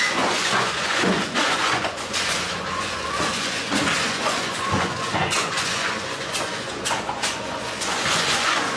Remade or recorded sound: remade